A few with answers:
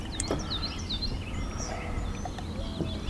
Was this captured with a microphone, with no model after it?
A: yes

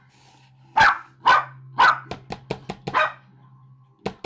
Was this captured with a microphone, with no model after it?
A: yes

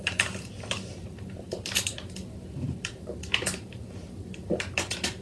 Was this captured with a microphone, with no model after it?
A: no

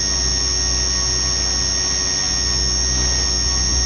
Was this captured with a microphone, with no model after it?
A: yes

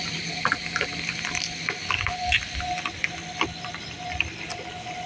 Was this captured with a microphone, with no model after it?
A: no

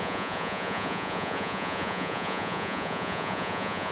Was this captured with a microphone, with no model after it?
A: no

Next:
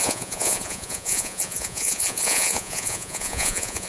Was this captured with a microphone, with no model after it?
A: no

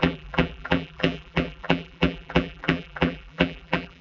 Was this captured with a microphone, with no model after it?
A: no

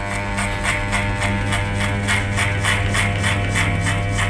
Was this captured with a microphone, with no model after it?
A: yes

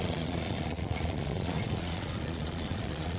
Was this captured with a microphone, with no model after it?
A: no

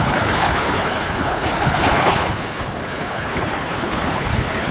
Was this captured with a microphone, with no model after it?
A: no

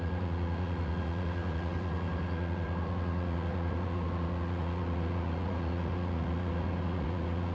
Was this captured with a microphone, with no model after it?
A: no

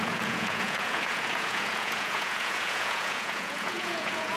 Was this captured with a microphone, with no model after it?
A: no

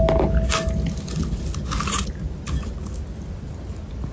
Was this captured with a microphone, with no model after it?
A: yes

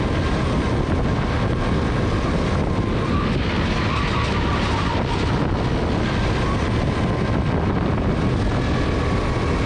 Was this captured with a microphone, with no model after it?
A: yes